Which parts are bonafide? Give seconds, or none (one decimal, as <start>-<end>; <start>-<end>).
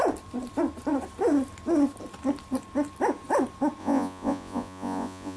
0.0-3.8